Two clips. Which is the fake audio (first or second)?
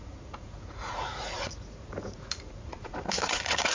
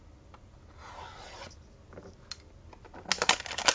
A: first